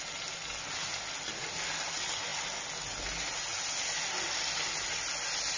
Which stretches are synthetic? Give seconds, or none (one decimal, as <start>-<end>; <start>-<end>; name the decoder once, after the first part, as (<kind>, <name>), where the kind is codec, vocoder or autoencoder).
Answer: none